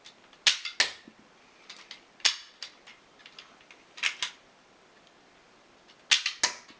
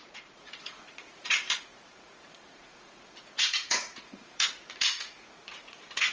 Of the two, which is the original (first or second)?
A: first